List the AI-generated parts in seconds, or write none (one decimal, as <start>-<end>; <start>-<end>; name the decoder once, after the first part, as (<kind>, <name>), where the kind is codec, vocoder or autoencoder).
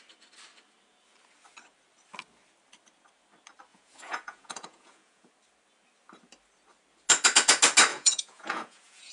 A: 3.7-5.3 (vocoder, Vocos); 7.9-9.1